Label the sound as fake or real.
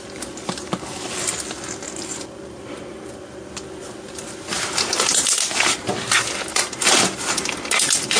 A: real